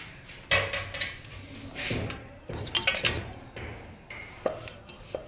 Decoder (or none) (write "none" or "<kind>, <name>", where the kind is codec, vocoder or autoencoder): none